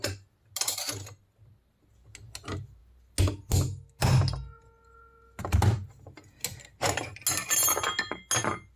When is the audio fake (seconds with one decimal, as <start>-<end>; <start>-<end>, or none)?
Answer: none